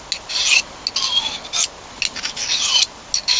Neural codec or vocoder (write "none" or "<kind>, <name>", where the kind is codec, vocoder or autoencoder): none